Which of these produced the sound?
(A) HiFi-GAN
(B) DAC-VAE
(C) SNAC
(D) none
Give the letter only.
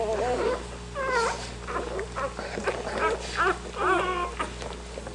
D